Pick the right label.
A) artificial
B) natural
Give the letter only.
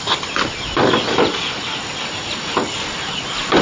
B